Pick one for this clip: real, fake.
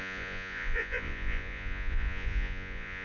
fake